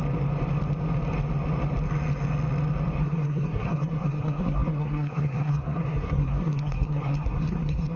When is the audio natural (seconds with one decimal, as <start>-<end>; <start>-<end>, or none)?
0.0-3.0